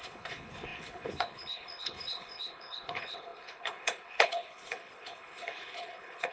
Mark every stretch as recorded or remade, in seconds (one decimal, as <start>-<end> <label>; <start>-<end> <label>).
0.0-6.3 remade